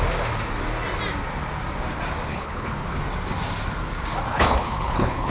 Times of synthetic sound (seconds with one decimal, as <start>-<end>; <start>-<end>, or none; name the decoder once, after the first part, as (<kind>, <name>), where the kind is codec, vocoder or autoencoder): 2.3-3.0 (codec, HILCodec); 4.3-5.3